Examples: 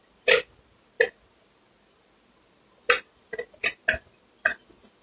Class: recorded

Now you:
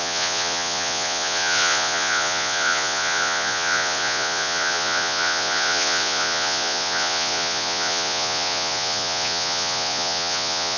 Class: remade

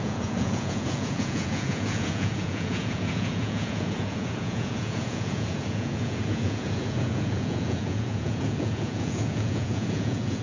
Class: remade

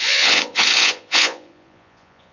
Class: remade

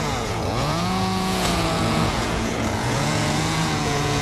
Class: remade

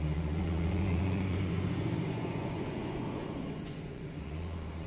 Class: remade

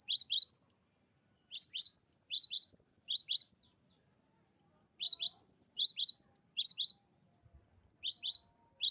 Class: recorded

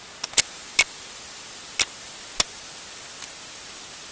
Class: recorded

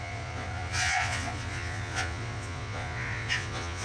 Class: remade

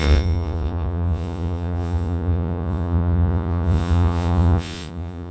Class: remade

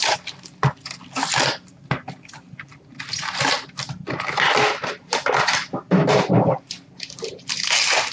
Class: recorded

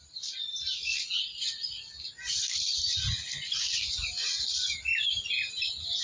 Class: recorded